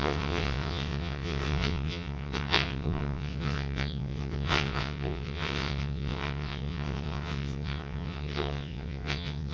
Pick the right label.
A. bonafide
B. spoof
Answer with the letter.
B